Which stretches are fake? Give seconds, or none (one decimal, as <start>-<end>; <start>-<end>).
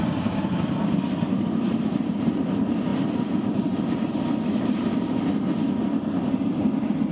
0.0-7.1